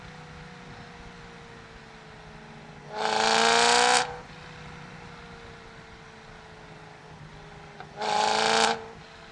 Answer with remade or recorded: recorded